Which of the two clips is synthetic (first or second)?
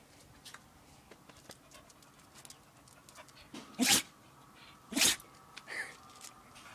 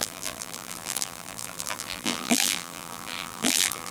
second